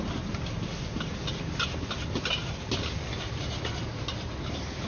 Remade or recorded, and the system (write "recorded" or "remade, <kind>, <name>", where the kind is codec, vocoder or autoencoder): recorded